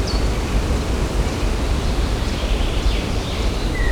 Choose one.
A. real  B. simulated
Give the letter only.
B